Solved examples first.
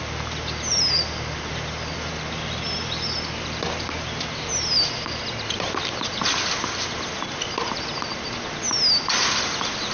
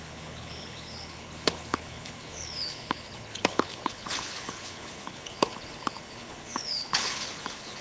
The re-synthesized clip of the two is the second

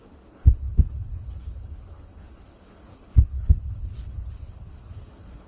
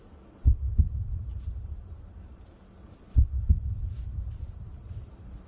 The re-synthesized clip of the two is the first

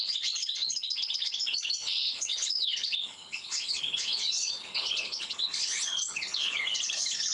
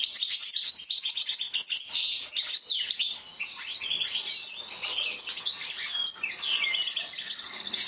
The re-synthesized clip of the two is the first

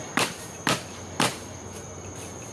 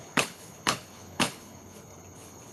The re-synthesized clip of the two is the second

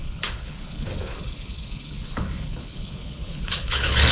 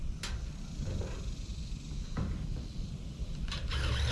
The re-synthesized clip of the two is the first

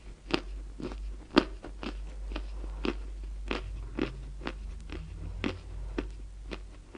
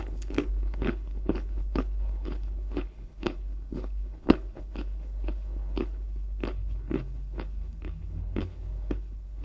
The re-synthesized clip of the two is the second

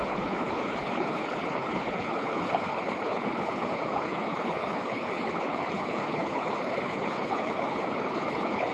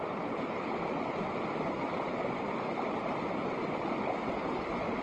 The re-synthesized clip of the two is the first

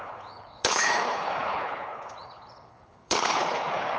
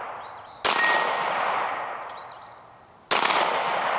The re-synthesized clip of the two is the first